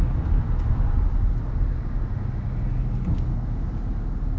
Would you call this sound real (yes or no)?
yes